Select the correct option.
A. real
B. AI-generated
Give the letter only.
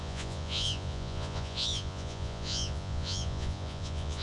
B